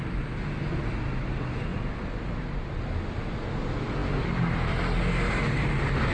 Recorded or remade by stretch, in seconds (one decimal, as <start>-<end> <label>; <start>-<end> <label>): 0.0-6.1 recorded